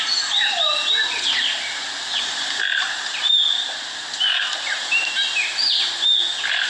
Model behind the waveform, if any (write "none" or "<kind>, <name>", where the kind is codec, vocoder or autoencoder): none